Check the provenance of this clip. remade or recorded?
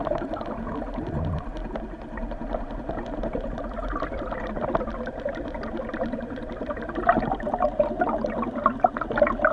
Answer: recorded